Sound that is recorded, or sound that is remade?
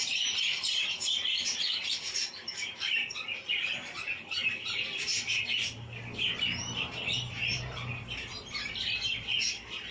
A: remade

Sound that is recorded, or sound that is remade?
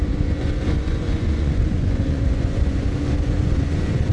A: remade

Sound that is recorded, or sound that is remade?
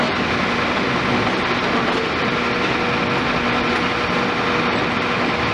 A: recorded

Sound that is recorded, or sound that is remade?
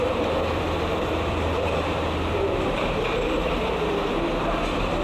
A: remade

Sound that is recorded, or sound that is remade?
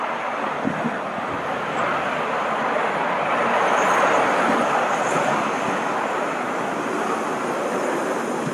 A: recorded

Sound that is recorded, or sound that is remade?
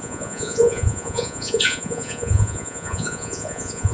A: remade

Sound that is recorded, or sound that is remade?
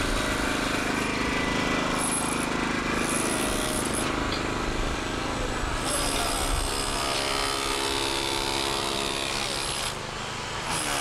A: recorded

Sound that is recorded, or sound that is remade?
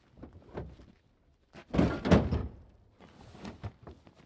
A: recorded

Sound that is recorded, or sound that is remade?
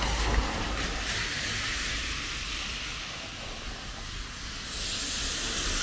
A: recorded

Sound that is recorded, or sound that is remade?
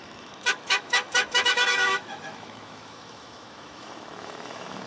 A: remade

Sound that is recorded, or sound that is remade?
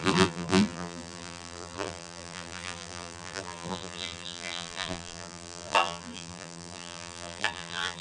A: remade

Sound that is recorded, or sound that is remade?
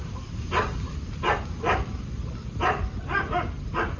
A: recorded